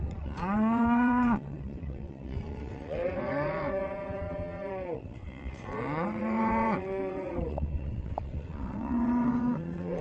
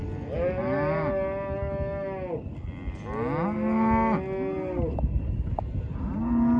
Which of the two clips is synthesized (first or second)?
first